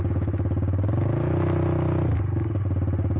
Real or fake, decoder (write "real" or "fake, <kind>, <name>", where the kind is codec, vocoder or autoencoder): real